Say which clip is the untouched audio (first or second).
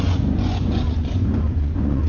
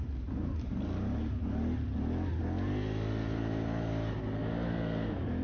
second